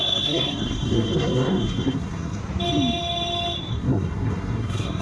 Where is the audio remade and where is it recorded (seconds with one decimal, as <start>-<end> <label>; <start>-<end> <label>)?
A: 0.0-2.4 remade; 2.4-3.7 recorded; 3.7-5.0 remade